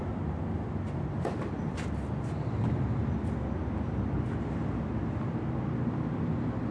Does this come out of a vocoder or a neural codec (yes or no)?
no